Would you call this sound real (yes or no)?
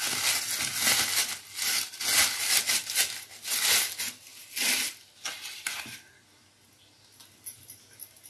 yes